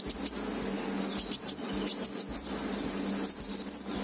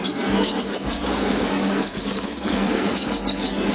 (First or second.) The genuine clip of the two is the first